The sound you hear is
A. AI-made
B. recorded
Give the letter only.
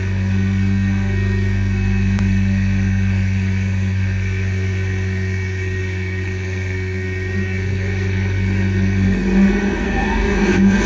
A